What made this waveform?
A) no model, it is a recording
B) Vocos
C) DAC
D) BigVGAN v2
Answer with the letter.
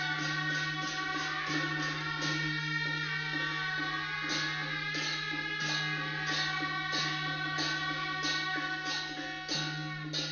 A